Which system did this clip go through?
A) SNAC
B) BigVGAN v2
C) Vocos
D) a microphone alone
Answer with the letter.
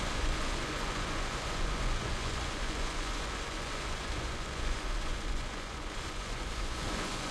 C